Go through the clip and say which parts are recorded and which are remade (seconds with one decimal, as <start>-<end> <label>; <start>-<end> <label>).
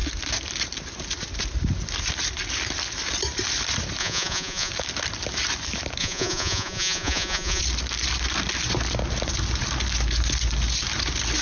0.0-4.0 recorded; 4.0-4.7 remade; 4.7-6.0 recorded; 6.0-7.6 remade; 7.6-11.4 recorded